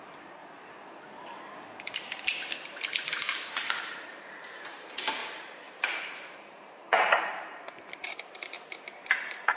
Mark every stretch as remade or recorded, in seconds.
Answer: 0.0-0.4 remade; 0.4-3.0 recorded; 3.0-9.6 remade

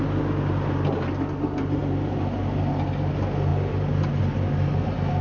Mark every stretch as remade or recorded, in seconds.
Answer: 0.0-5.2 recorded